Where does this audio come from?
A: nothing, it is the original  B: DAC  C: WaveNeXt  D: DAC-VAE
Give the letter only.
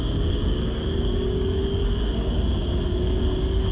B